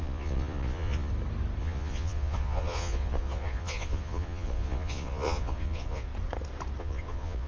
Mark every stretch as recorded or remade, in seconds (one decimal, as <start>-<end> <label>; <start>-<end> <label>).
0.0-1.1 remade; 1.1-1.6 recorded; 1.6-6.1 remade; 6.1-6.8 recorded; 6.8-7.5 remade